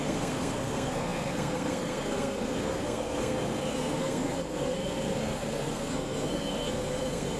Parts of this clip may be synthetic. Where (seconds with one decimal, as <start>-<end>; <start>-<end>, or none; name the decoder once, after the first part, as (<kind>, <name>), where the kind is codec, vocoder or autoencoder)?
0.0-7.4 (codec, SNAC)

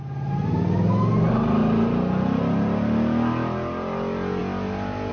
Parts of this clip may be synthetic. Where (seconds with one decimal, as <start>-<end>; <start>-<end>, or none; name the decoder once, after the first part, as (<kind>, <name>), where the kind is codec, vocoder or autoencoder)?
none

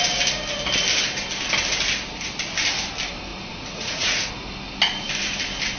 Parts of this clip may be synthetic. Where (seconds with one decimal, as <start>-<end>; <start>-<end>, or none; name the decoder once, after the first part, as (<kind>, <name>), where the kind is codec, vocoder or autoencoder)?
3.3-4.3 (vocoder, Vocos)

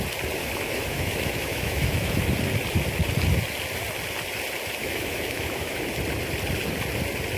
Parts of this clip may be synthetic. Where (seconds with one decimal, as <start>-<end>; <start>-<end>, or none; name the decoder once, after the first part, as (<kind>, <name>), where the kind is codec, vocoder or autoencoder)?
0.4-2.2 (autoencoder, DAC-VAE); 4.8-5.9

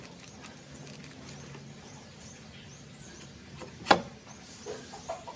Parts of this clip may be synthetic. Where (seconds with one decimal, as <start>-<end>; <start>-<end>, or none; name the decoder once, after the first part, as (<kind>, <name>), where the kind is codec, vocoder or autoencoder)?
none